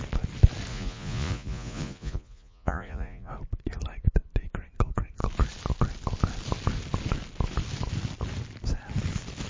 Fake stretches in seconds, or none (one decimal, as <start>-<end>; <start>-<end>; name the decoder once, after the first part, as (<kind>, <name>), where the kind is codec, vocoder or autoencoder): 0.7-3.3 (vocoder, Vocos)